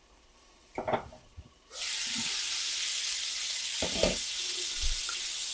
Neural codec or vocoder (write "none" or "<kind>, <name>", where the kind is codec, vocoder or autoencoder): none